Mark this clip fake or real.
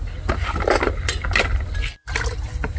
real